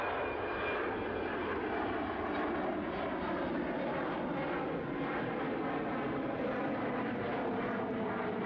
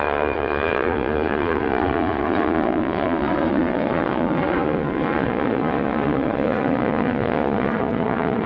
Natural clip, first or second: first